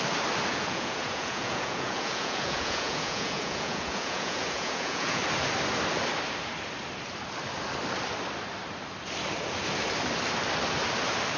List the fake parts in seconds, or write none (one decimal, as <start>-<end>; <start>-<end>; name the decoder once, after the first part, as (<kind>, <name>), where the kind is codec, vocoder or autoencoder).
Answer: 0.5-5.2 (vocoder, Vocos)